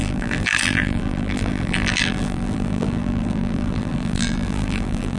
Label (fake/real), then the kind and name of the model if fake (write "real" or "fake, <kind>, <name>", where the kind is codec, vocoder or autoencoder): fake, vocoder, BigVGAN v2